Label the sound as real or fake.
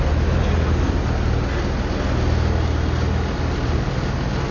real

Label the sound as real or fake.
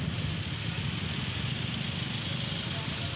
real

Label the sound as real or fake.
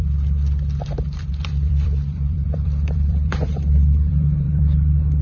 fake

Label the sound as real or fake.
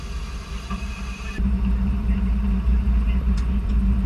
fake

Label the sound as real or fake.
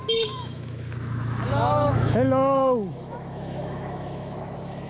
fake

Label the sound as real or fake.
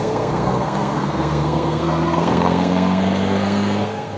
fake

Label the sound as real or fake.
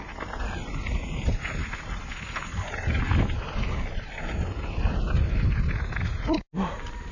real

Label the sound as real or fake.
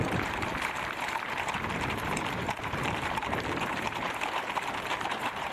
fake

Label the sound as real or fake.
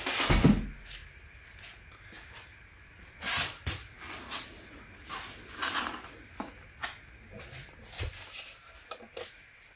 real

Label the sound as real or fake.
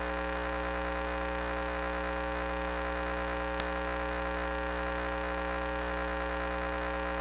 real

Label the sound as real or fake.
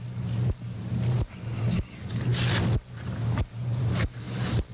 real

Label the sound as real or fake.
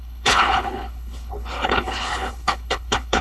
fake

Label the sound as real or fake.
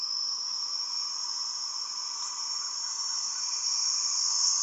real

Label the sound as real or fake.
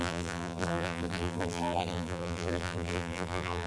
fake